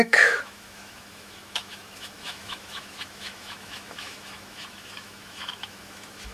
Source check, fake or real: fake